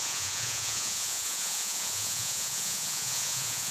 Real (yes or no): no